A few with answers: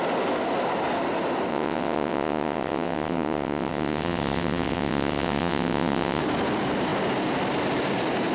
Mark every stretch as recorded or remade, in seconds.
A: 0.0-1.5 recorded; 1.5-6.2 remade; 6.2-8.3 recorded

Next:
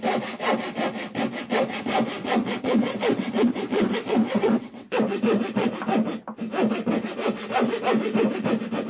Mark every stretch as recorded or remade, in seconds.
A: 0.0-2.2 recorded; 2.2-5.7 remade; 5.7-8.9 recorded

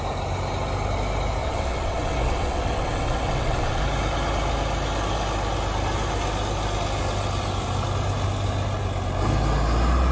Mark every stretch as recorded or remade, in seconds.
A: 0.0-1.4 recorded; 1.4-3.8 remade; 3.8-10.1 recorded

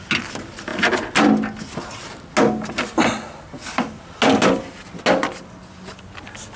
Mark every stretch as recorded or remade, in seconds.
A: 0.0-6.6 recorded